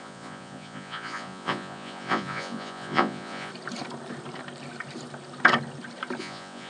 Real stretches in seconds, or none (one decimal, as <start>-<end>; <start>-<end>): 3.5-6.2

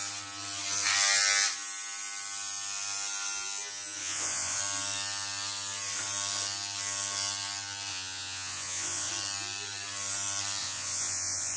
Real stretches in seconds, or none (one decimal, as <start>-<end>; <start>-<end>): 0.0-4.0; 4.6-7.9; 9.1-10.6

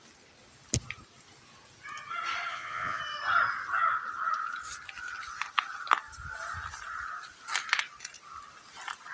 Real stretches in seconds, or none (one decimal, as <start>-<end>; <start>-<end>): 0.0-2.5; 3.0-9.1

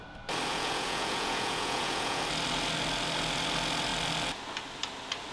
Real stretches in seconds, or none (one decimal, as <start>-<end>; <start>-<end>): 0.0-0.5; 2.2-5.3